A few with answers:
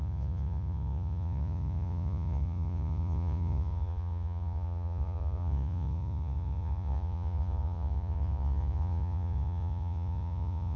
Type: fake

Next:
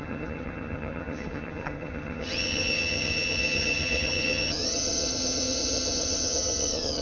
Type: fake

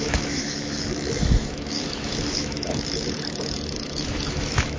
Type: fake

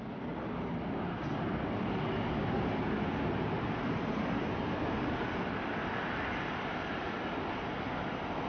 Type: real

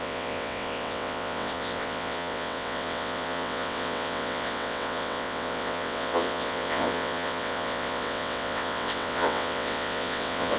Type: fake